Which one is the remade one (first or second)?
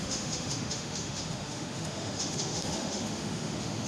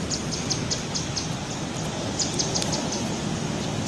first